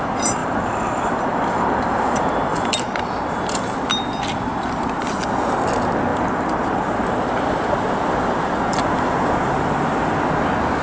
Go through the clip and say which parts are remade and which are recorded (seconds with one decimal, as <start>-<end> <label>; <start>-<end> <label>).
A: 0.0-0.4 recorded; 0.4-5.2 remade; 5.2-6.1 recorded; 6.1-10.3 remade; 10.3-10.8 recorded